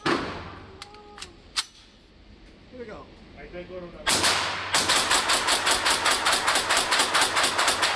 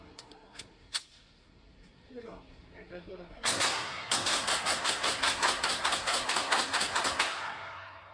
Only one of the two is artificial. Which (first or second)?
second